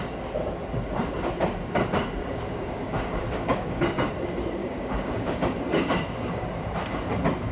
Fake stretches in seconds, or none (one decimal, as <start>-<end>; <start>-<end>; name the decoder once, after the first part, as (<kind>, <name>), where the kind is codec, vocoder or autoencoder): 2.2-4.1 (codec, DAC); 4.6-6.5